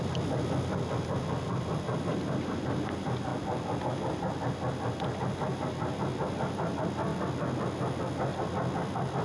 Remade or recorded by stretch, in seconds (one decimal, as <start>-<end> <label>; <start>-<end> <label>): 0.0-3.3 remade; 3.3-3.8 recorded; 3.8-7.1 remade; 7.1-8.4 recorded; 8.4-9.2 remade